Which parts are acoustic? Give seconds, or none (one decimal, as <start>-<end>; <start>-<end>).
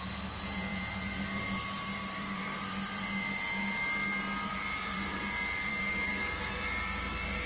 0.0-2.0; 2.6-5.7; 6.5-7.5